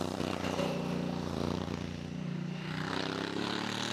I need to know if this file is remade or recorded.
recorded